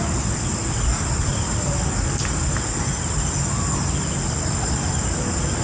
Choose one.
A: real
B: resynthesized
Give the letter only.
A